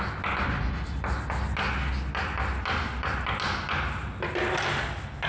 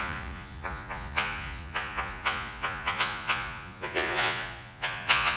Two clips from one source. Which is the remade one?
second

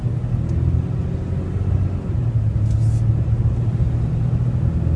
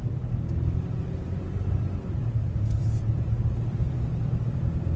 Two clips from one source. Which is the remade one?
second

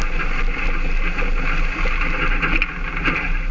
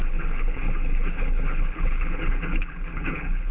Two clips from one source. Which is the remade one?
second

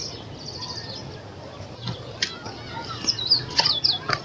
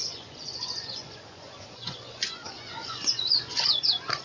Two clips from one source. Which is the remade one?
second